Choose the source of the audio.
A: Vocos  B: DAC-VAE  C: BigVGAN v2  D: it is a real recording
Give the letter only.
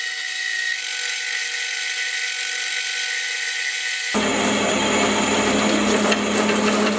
D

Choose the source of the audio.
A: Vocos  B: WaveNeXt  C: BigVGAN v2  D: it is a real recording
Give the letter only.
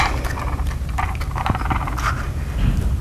D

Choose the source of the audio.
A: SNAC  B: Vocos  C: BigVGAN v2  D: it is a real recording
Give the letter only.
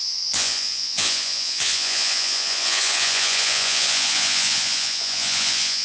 B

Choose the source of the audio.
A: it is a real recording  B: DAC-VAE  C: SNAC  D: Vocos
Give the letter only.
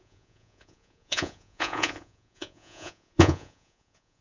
D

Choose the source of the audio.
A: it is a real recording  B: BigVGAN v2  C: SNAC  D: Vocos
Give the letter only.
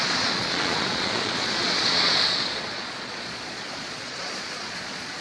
D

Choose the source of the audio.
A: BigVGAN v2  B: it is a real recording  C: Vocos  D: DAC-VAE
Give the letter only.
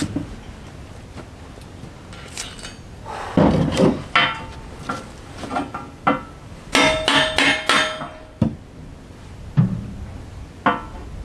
B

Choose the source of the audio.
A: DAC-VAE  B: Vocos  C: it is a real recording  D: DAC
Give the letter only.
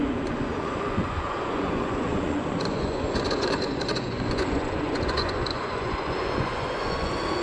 B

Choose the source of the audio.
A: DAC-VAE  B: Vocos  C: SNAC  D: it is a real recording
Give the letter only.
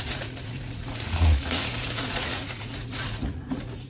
B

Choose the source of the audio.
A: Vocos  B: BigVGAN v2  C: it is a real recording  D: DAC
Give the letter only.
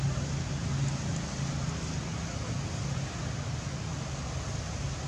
C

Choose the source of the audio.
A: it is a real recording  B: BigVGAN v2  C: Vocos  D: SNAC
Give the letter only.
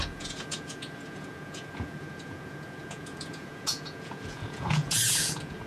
C